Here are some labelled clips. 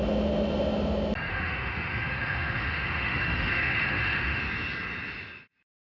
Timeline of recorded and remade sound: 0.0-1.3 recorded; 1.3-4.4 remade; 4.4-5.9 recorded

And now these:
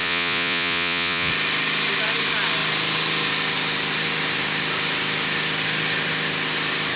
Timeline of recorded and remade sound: 0.0-1.3 remade; 1.3-7.0 recorded

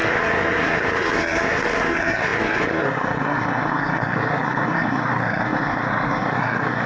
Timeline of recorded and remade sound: 0.0-6.9 remade

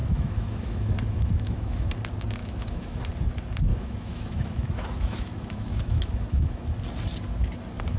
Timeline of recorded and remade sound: 0.0-1.9 remade; 1.9-2.4 recorded; 2.4-3.0 remade; 3.0-3.7 recorded; 3.7-6.7 remade; 6.7-8.0 recorded

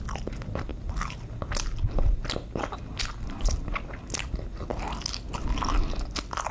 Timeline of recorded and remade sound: 0.0-6.5 recorded

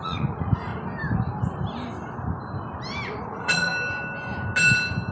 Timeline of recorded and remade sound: 0.0-0.7 remade; 0.7-3.2 recorded; 3.2-3.7 remade; 3.7-5.1 recorded